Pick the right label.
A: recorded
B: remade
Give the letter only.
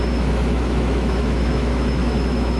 B